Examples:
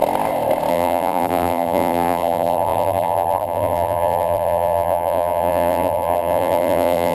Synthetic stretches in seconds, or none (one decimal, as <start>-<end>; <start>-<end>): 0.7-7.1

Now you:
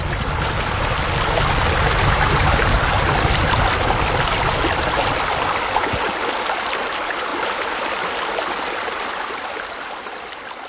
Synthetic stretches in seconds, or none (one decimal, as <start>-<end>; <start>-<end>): 7.3-9.2

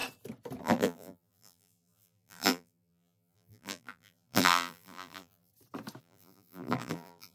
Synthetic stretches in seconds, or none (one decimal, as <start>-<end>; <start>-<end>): 0.6-5.5; 6.0-7.3

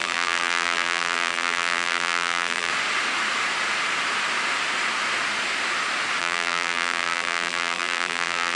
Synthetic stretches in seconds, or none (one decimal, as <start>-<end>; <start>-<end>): 0.0-2.7; 6.2-8.5